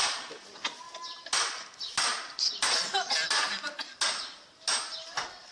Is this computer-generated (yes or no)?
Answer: no